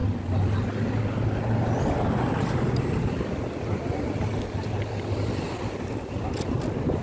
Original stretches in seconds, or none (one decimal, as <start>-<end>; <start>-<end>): 0.0-7.0